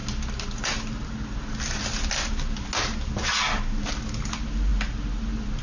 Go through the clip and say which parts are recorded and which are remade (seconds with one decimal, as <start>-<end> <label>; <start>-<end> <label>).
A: 0.0-5.6 recorded